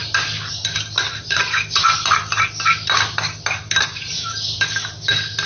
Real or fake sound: real